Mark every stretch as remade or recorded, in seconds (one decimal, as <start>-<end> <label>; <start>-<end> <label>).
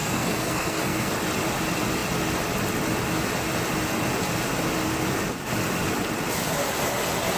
0.0-1.1 remade; 1.1-7.4 recorded